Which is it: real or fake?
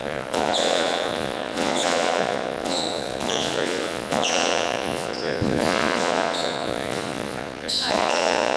fake